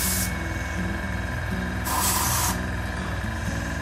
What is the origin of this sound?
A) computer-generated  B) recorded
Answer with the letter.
A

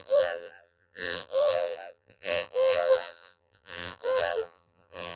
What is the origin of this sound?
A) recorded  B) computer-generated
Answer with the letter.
B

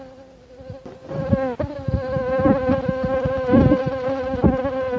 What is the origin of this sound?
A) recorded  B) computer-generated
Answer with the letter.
A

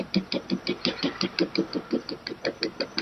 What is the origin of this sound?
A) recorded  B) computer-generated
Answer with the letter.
B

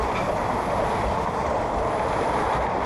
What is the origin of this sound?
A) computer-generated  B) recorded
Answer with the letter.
A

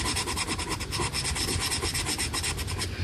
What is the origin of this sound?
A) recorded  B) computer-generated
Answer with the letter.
B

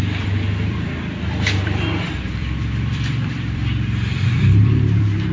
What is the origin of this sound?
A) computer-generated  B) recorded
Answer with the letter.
A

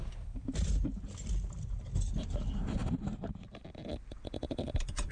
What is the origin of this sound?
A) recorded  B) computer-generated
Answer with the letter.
A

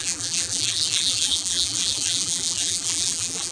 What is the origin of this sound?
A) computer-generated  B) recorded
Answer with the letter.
A